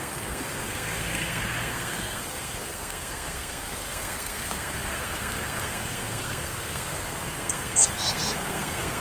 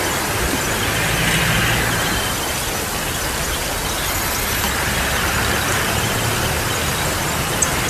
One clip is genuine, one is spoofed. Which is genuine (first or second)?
second